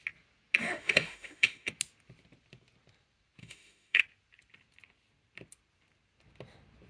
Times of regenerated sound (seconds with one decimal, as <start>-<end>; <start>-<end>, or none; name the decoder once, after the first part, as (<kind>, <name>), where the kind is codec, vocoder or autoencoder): 0.6-1.7 (autoencoder, DAC-VAE); 3.4-4.0